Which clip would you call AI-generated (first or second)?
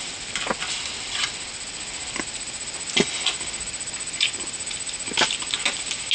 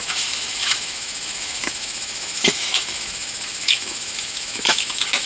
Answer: second